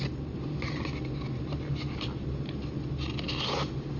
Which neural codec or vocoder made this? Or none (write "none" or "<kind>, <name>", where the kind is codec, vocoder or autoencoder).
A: none